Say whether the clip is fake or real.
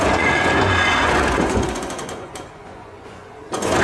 fake